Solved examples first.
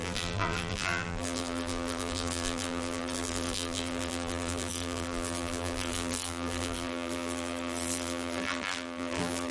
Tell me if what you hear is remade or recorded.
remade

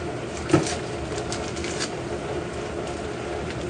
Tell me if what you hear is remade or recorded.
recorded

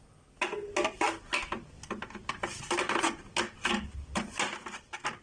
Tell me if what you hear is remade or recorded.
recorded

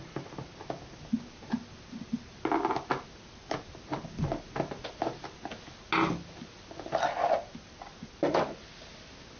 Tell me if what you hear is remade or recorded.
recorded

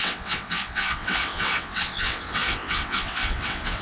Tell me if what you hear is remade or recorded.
remade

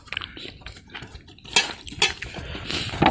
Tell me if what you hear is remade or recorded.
recorded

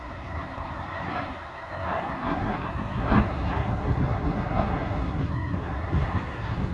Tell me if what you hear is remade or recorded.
remade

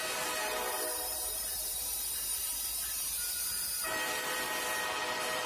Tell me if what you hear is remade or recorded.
remade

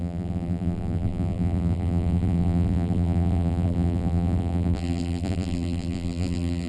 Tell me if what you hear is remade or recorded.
remade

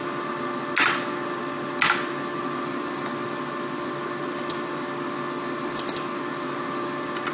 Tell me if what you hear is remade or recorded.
recorded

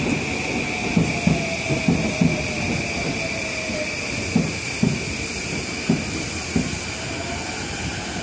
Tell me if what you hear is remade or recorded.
recorded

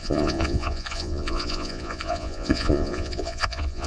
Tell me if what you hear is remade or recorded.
remade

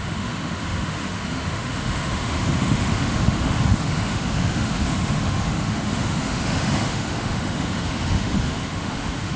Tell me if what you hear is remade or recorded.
remade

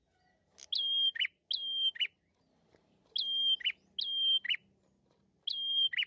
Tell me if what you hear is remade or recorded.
recorded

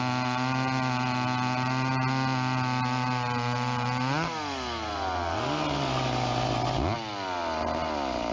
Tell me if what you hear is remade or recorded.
recorded